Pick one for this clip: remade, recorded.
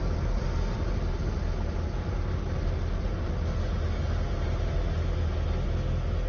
recorded